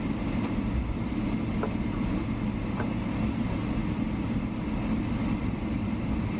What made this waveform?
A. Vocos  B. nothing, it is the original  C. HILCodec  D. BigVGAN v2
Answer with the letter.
B